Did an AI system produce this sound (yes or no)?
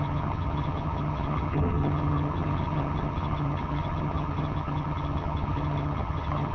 yes